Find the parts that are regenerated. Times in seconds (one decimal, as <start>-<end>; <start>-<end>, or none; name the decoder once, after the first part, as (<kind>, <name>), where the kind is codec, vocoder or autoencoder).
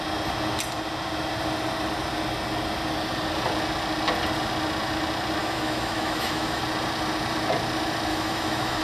5.4-6.6 (autoencoder, DAC-VAE); 8.1-8.8